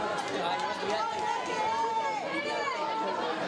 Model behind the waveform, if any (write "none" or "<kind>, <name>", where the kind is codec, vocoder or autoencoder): none